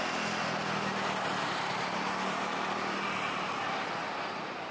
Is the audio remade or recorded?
recorded